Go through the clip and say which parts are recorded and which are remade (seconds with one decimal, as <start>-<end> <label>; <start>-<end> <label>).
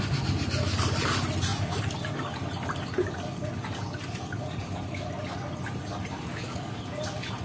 0.0-6.3 recorded; 6.3-6.8 remade; 6.8-7.4 recorded